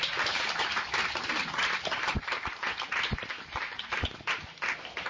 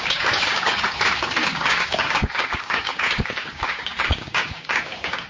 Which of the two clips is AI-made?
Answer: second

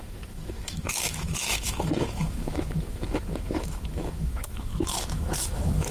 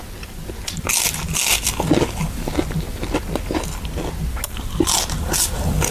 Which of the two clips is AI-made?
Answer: first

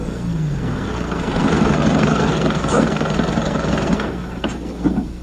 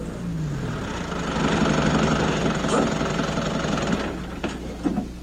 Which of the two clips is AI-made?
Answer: first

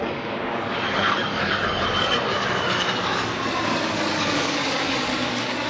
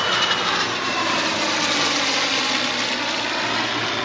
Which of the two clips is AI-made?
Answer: first